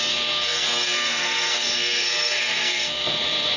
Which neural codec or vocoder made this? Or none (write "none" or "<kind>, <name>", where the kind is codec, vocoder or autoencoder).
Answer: codec, SNAC